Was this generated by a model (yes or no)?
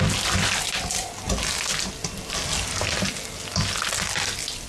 no